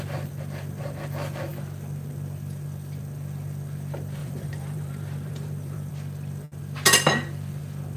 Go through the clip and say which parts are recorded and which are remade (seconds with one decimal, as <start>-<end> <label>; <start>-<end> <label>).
0.0-4.2 recorded; 4.2-5.9 remade; 5.9-8.0 recorded